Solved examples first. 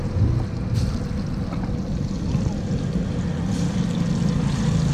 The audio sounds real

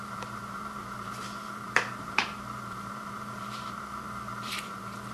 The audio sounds fake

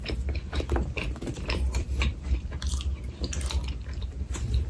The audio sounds fake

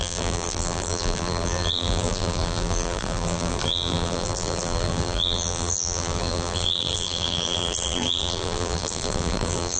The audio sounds fake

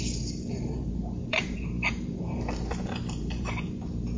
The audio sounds fake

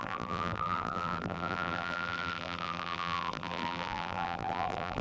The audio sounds fake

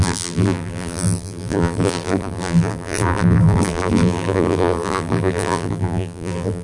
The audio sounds fake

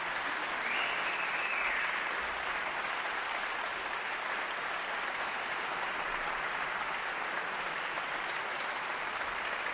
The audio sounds fake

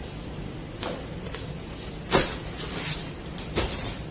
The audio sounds fake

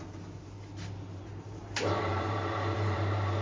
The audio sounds fake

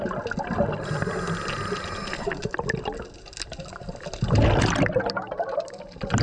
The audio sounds real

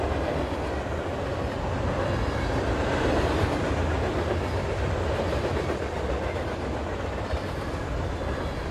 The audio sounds real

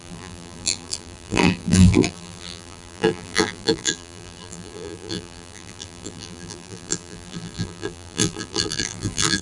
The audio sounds fake